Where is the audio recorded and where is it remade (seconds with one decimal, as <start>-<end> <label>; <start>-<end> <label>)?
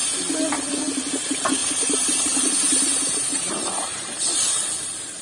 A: 0.0-1.1 recorded; 1.1-5.2 remade